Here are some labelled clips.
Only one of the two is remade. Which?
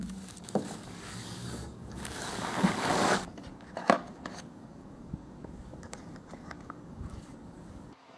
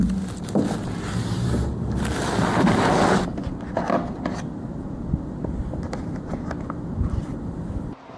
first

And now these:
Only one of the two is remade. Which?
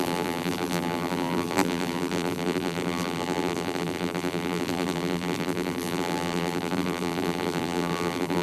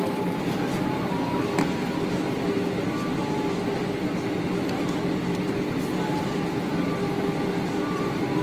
first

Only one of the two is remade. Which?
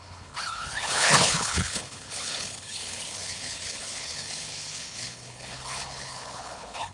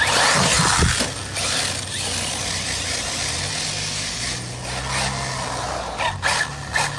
first